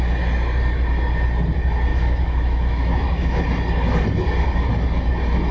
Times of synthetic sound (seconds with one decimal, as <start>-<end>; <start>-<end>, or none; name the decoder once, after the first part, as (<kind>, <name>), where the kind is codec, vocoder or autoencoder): 1.9-3.4 (autoencoder, DAC-VAE)

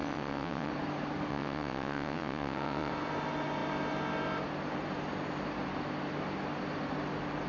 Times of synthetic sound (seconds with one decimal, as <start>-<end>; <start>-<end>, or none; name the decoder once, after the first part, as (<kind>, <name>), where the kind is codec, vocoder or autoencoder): 0.0-0.7 (vocoder, WaveNeXt); 1.3-2.9

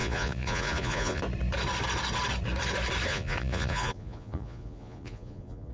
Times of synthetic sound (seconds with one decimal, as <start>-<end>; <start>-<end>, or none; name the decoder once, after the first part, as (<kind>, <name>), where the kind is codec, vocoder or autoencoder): 0.0-1.2 (vocoder, Vocos); 3.1-5.7

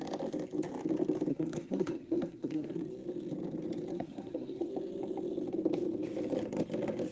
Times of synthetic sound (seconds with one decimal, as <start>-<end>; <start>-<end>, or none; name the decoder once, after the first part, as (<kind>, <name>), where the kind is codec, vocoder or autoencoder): 1.3-2.8 (codec, SNAC); 3.9-4.7

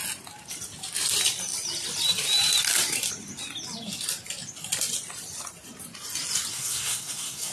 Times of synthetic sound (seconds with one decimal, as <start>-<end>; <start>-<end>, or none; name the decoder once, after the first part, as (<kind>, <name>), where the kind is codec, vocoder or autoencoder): 6.5-7.5 (codec, SNAC)

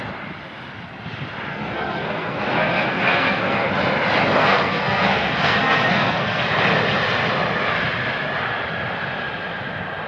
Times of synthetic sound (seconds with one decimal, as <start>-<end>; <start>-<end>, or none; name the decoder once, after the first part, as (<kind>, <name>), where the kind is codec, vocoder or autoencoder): 1.5-3.7 (codec, SNAC); 4.4-6.4

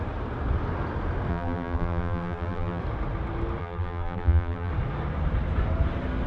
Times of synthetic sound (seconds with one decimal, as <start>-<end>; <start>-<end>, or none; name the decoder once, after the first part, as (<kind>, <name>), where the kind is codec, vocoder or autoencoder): 1.3-2.8 (vocoder, BigVGAN v2); 3.6-4.7